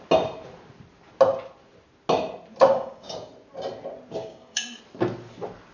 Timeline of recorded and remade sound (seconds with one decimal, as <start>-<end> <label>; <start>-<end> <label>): 0.0-2.7 recorded; 2.7-3.3 remade; 3.3-4.2 recorded; 4.2-4.8 remade; 4.8-5.7 recorded

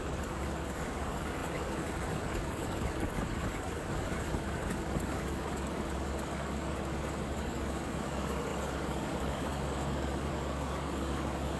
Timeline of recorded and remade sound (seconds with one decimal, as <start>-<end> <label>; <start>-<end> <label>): 0.0-11.6 remade

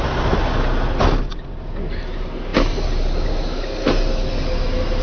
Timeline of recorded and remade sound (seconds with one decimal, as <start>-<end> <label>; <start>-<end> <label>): 0.0-5.0 recorded

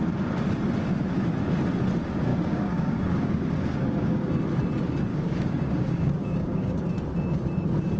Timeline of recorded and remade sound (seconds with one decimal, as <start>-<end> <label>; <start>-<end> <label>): 0.0-2.3 recorded; 2.3-4.3 remade; 4.3-5.1 recorded; 5.1-6.9 remade; 6.9-8.0 recorded